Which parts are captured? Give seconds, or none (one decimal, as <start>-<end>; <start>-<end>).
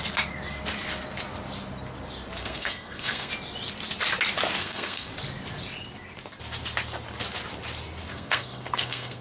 0.0-2.4; 3.3-4.6; 5.1-8.1